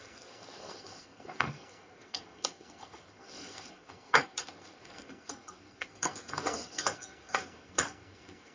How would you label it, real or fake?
fake